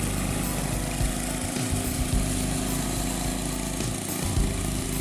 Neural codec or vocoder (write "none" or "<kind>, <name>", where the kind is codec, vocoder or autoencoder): none